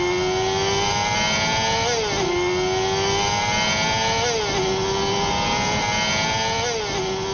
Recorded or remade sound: recorded